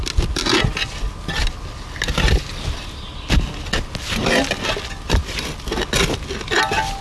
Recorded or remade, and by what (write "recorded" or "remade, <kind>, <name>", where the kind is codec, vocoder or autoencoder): recorded